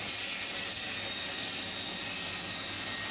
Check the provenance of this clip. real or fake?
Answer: real